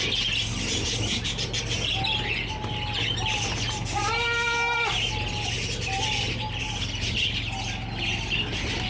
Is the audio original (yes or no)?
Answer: yes